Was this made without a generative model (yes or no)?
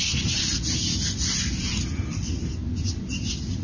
yes